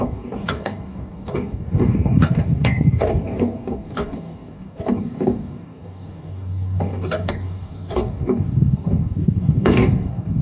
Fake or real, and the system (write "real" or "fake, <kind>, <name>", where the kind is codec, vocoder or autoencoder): fake, codec, DAC